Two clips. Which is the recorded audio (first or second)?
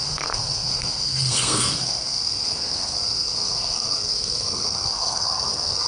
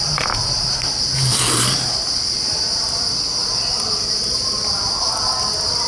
second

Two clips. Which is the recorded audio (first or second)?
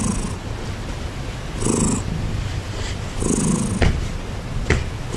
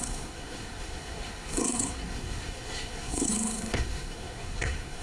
first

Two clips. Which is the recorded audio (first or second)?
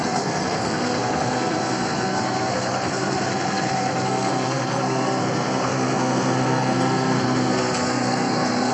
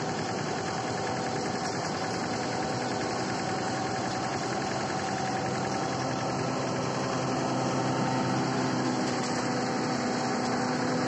second